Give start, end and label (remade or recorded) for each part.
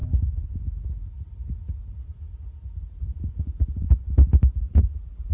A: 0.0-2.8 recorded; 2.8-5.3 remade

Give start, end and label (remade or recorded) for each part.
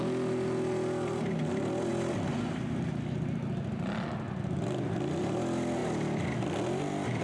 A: 0.0-7.2 recorded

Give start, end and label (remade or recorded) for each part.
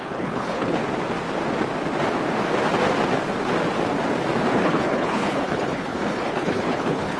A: 0.0-0.8 remade; 0.8-4.5 recorded; 4.5-7.2 remade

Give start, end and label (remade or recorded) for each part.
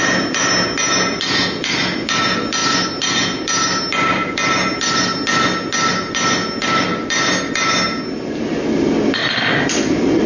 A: 0.0-10.3 recorded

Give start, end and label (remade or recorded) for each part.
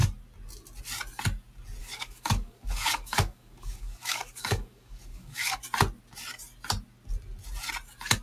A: 0.0-1.8 recorded; 1.8-5.6 remade; 5.6-8.2 recorded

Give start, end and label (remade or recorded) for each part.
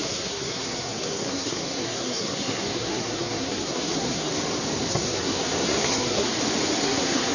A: 0.0-4.3 remade; 4.3-4.9 recorded; 4.9-6.3 remade; 6.3-6.8 recorded; 6.8-7.3 remade